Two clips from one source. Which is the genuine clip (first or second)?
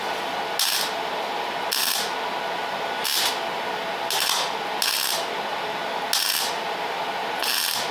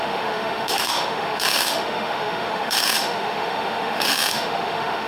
first